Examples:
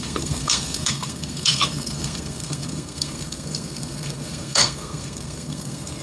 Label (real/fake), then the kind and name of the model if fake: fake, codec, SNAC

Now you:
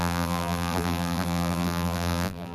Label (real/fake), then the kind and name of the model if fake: fake, vocoder, BigVGAN v2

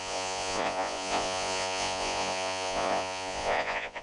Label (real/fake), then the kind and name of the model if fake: fake, vocoder, Vocos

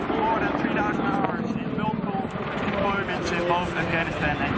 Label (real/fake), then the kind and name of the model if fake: real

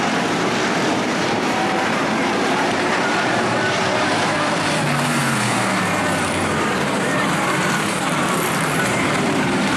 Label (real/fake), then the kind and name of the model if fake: fake, vocoder, BigVGAN v2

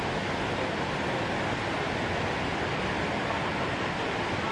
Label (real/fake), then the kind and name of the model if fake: real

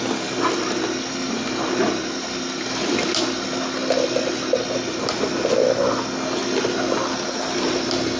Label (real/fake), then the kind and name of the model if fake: real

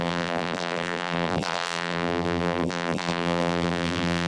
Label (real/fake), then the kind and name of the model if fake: fake, vocoder, BigVGAN v2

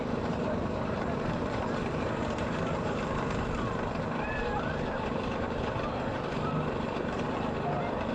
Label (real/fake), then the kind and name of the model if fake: fake, vocoder, BigVGAN v2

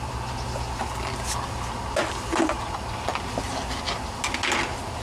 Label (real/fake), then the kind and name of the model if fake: real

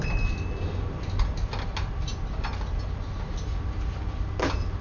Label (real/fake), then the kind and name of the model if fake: real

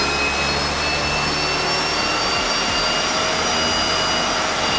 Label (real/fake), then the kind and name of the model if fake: real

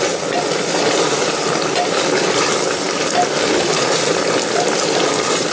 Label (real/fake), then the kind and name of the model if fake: fake, vocoder, BigVGAN v2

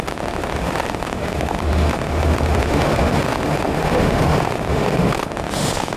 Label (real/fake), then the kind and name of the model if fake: fake, autoencoder, DAC-VAE